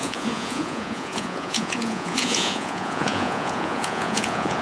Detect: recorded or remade remade